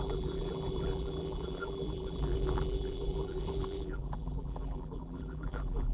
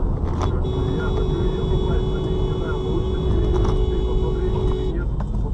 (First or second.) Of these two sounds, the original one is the second